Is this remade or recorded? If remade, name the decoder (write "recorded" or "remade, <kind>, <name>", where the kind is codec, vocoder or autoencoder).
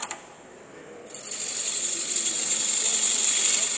remade, vocoder, BigVGAN v2